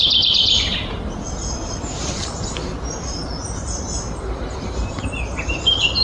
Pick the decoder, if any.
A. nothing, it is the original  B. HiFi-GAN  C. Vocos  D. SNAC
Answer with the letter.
A